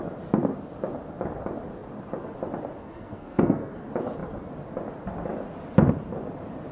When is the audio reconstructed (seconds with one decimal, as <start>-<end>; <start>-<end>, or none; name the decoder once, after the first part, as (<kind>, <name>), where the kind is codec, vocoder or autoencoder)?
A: 2.8-3.8 (codec, SNAC)